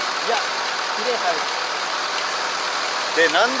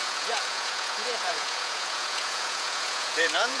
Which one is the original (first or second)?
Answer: first